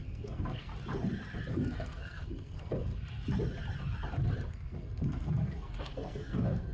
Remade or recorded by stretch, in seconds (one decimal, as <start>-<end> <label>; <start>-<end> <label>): 0.0-0.7 remade; 0.7-1.5 recorded; 1.5-2.9 remade; 2.9-4.5 recorded; 4.5-6.7 remade

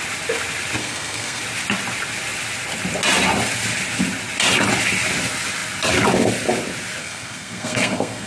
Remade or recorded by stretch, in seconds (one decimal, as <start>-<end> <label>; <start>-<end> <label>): 0.0-0.8 recorded; 0.8-1.4 remade; 1.4-7.0 recorded; 7.0-8.3 remade